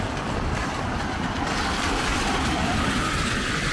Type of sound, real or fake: fake